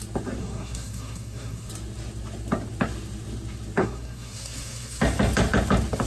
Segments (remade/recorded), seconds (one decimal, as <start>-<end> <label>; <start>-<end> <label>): 0.0-0.4 recorded; 0.4-1.7 remade; 1.7-3.8 recorded; 3.8-5.0 remade; 5.0-6.1 recorded